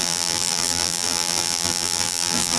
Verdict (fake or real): fake